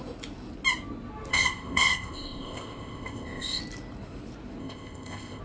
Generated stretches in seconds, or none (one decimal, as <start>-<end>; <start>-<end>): 1.3-3.6; 4.6-5.4